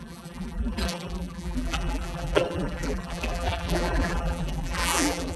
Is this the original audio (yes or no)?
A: no